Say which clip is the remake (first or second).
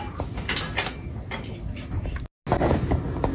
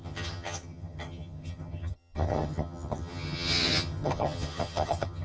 second